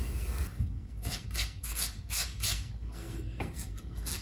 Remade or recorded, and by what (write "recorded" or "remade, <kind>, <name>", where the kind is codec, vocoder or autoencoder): remade, codec, SNAC